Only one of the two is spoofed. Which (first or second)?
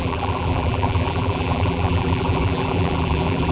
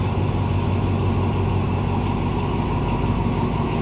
first